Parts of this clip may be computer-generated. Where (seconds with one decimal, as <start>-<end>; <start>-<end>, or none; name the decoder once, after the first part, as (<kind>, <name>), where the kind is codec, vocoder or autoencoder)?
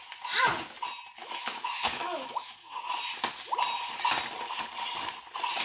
1.2-2.9 (autoencoder, DAC-VAE)